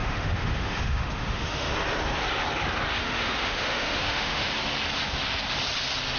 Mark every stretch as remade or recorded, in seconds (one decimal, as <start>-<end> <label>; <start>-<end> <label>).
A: 0.0-1.7 remade; 1.7-3.0 recorded; 3.0-4.5 remade; 4.5-6.2 recorded